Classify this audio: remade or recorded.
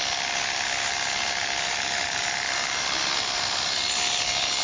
recorded